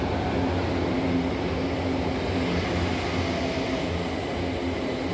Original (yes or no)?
yes